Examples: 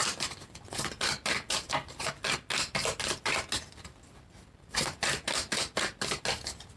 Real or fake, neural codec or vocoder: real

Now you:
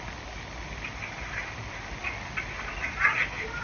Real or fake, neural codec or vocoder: real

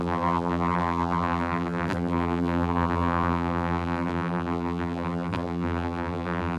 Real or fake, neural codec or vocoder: fake, vocoder, BigVGAN v2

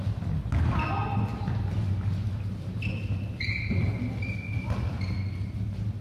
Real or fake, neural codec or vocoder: real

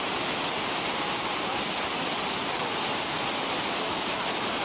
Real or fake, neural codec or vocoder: real